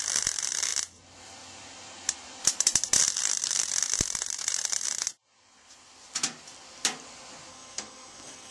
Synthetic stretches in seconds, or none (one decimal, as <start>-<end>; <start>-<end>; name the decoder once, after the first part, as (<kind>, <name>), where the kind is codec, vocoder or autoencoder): 7.5-8.5 (codec, SNAC)